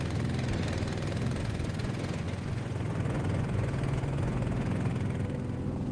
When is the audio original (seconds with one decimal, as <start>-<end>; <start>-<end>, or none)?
0.0-1.4; 4.9-5.9